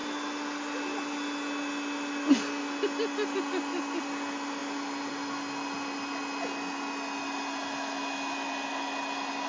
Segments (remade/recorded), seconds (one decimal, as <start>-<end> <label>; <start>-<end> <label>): 0.0-9.5 recorded